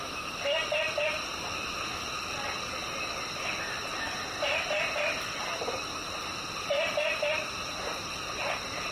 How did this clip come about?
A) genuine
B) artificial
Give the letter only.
A